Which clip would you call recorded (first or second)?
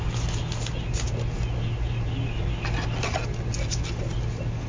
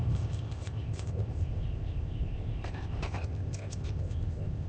first